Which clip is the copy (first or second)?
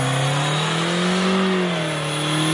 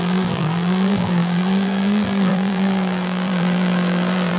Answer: second